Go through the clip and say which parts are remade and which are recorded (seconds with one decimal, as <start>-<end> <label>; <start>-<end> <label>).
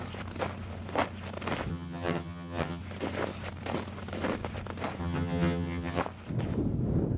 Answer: 0.0-1.7 recorded; 1.7-2.8 remade; 2.8-5.0 recorded; 5.0-6.0 remade; 6.0-7.2 recorded